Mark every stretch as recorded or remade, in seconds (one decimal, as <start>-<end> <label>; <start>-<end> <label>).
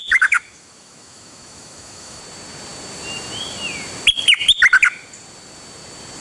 0.0-2.2 remade; 2.2-6.2 recorded